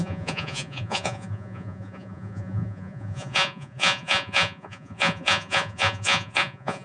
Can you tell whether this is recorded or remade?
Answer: remade